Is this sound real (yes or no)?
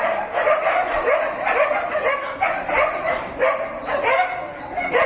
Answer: yes